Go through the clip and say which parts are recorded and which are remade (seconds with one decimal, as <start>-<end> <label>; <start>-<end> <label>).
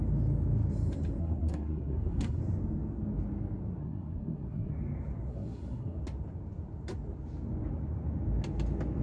0.0-1.2 recorded; 1.2-2.4 remade; 2.4-3.8 recorded; 3.8-4.7 remade; 4.7-5.3 recorded; 5.3-6.0 remade; 6.0-9.0 recorded